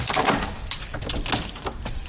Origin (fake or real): real